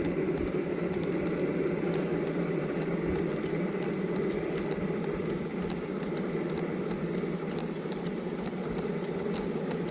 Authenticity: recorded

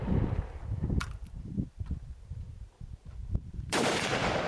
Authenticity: remade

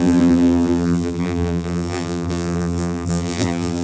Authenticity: remade